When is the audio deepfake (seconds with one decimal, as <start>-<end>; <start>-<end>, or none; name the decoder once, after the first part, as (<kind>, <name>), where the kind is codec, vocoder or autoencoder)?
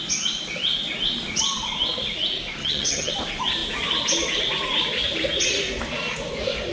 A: 2.6-3.1 (vocoder, HiFi-GAN)